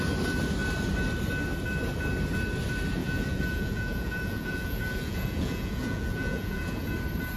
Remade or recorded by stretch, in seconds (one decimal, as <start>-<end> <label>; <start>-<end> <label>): 0.0-3.0 recorded; 3.0-6.9 remade; 6.9-7.4 recorded

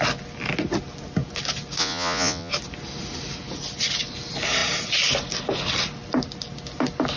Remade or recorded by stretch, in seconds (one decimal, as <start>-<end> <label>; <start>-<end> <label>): 0.0-1.8 recorded; 1.8-2.5 remade; 2.5-7.2 recorded

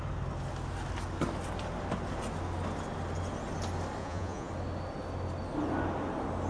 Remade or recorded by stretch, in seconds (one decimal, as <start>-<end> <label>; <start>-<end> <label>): 0.0-4.0 recorded; 4.0-4.5 remade; 4.5-6.5 recorded

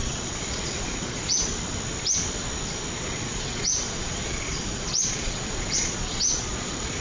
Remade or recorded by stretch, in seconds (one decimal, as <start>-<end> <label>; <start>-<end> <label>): 0.0-1.5 remade; 1.5-3.0 recorded; 3.0-7.0 remade